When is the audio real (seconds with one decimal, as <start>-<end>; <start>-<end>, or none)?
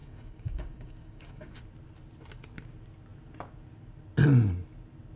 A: 1.6-5.2